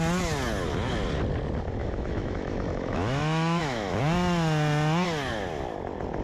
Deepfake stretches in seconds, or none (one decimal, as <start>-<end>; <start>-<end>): 1.8-4.0